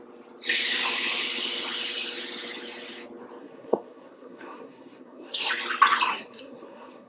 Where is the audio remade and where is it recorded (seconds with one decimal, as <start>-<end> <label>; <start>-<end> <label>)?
0.0-3.4 recorded; 3.4-5.5 remade; 5.5-6.1 recorded; 6.1-7.1 remade